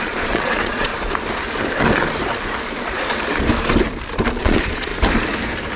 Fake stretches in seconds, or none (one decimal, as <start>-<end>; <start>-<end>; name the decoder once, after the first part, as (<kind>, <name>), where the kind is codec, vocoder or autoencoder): 0.0-0.9 (vocoder, Vocos); 4.4-4.9